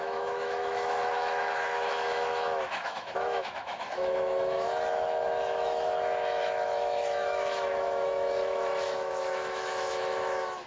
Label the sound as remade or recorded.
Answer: remade